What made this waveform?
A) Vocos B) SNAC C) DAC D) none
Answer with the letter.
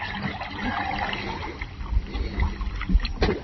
D